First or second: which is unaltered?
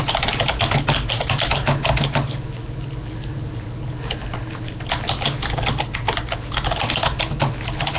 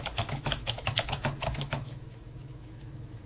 first